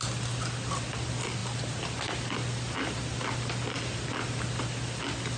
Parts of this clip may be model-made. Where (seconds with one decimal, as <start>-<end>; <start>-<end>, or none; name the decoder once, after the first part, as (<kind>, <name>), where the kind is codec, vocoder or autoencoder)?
none